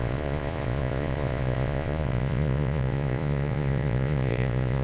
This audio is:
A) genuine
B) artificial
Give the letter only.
B